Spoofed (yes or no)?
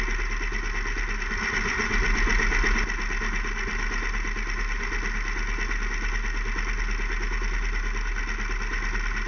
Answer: no